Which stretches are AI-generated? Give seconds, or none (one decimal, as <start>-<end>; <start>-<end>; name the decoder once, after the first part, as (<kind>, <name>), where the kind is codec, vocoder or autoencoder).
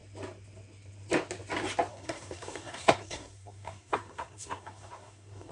1.9-5.5 (codec, SNAC)